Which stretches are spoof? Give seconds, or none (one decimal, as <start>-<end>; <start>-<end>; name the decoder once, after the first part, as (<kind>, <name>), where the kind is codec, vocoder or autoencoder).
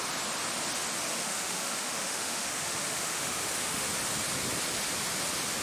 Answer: 1.1-3.9 (autoencoder, DAC-VAE)